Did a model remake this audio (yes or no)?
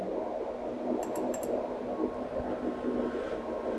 no